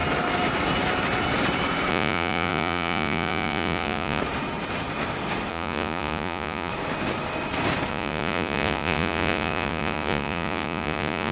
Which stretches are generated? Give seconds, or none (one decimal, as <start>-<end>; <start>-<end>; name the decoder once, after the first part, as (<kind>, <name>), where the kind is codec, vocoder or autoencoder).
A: 1.9-4.2 (vocoder, Vocos); 5.5-6.7; 7.9-11.3